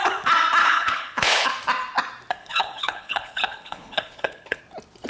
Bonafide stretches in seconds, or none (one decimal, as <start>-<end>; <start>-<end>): 0.0-0.6; 1.5-2.4; 4.6-5.1